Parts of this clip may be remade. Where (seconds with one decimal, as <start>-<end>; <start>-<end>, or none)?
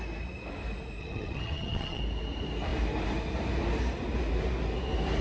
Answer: 1.0-2.0